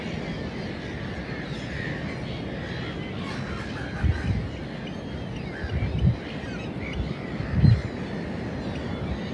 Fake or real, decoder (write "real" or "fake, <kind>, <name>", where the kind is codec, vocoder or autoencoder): real